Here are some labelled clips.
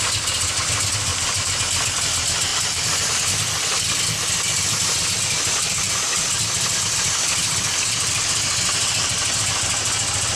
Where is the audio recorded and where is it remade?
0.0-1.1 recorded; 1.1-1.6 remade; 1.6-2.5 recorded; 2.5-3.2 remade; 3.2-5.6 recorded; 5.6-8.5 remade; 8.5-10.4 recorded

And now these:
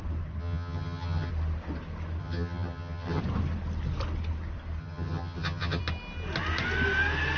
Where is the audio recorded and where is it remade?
0.0-0.4 recorded; 0.4-1.3 remade; 1.3-2.2 recorded; 2.2-3.2 remade; 3.2-4.8 recorded; 4.8-5.8 remade; 5.8-7.4 recorded

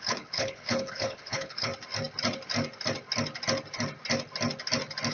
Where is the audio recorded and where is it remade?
0.0-1.7 remade; 1.7-5.1 recorded

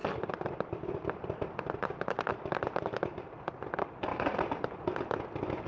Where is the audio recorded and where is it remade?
0.0-5.7 recorded

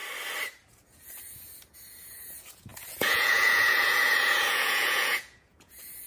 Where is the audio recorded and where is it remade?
0.0-0.7 recorded; 0.7-6.1 remade

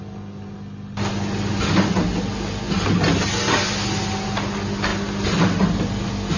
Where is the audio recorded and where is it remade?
0.0-6.4 recorded

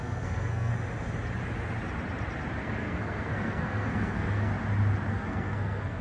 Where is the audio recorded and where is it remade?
0.0-0.7 remade; 0.7-2.6 recorded; 2.6-4.5 remade; 4.5-5.1 recorded; 5.1-6.0 remade